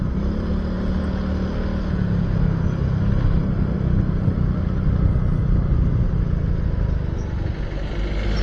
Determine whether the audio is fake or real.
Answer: real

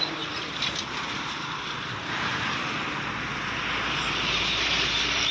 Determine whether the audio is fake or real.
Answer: real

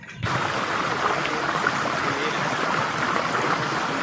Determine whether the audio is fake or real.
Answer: real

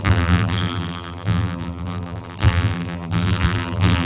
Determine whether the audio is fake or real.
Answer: fake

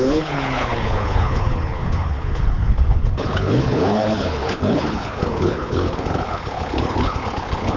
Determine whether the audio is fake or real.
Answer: fake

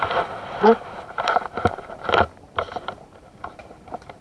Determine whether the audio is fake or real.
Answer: fake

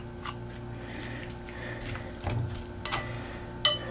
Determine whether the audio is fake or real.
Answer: real